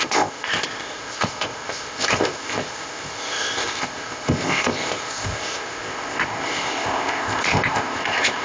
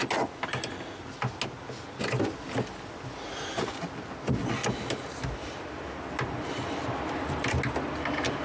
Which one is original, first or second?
second